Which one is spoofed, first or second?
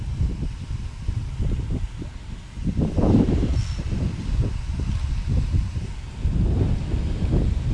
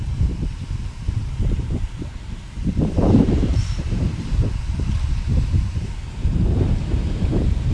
second